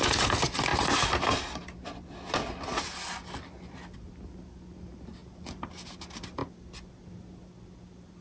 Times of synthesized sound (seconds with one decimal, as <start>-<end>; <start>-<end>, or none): none